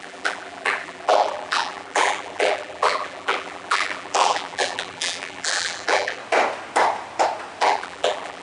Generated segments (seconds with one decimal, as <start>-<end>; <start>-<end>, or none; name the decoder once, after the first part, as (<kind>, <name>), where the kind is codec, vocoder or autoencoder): 0.0-6.2 (vocoder, BigVGAN v2); 7.6-8.4